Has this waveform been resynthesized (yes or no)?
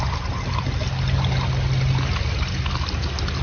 no